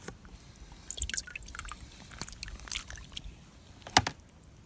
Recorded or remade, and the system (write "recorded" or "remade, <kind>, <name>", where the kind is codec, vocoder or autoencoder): recorded